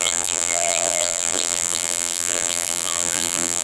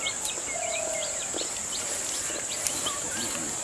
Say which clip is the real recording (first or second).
second